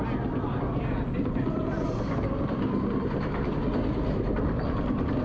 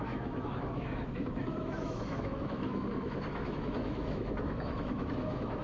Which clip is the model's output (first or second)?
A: second